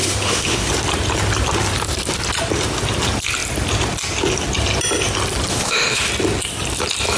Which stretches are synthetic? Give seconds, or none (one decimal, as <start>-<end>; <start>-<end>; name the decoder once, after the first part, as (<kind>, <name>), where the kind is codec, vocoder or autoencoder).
0.0-0.7 (autoencoder, DAC-VAE); 5.5-6.1